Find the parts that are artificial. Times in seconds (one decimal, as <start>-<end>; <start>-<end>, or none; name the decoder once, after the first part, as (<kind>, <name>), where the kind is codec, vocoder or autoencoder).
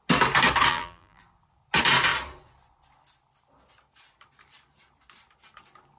0.7-1.2 (vocoder, BigVGAN v2)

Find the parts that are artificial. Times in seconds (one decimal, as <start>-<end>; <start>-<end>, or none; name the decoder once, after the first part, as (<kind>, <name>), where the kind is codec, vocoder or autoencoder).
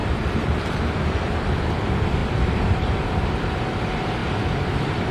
0.0-1.4 (vocoder, BigVGAN v2); 2.2-3.4; 4.2-5.1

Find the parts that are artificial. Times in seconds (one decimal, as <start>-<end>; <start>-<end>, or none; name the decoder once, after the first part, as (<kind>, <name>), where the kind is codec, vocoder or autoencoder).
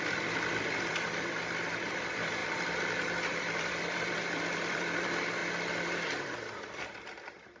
0.0-5.4 (vocoder, BigVGAN v2); 6.2-7.6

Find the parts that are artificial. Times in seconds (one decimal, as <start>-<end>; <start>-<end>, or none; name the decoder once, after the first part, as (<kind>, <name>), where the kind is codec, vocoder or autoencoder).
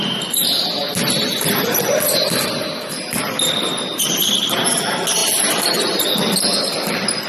none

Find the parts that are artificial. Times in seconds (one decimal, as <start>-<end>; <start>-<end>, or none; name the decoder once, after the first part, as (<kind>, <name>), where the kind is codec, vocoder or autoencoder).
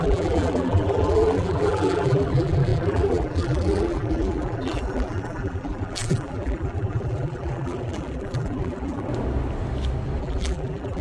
0.0-9.1 (vocoder, BigVGAN v2); 10.2-11.0